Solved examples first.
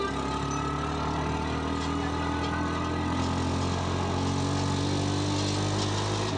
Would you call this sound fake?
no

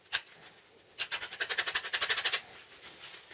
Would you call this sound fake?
no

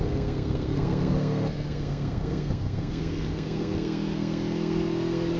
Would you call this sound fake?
yes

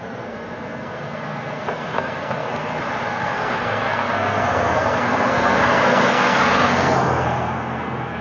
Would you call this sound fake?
yes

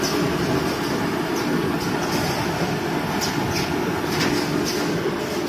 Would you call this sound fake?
no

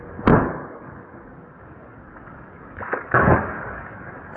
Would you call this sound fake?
yes